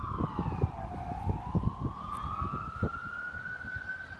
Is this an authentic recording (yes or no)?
yes